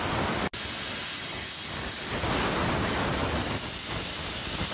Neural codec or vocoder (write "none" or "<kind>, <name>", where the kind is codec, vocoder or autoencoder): none